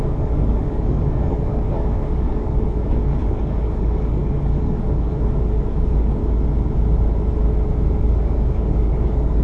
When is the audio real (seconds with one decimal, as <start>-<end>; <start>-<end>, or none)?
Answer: 6.2-8.0